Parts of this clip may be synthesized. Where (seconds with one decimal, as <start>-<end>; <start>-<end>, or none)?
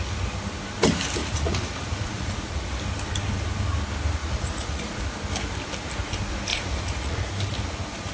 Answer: 1.2-2.8; 4.2-5.0; 6.5-7.2